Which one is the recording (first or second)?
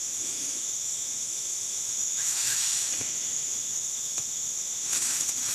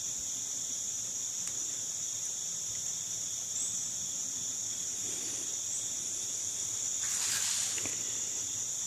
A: second